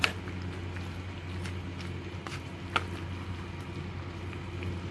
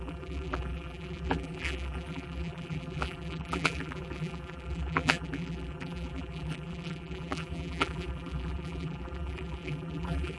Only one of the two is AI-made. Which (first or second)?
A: second